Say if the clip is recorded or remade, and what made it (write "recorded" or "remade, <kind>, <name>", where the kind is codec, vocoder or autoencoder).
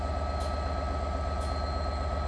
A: recorded